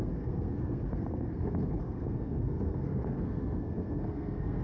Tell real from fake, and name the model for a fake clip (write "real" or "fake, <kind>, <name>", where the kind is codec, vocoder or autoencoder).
fake, codec, SNAC